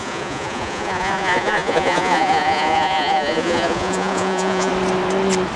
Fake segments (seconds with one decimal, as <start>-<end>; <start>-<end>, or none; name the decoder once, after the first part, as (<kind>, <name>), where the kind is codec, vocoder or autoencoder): 0.0-4.7 (vocoder, Vocos)